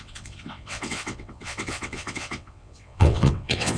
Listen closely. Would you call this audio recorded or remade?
remade